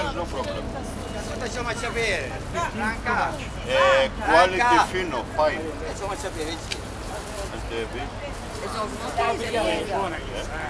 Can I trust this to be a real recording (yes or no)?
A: yes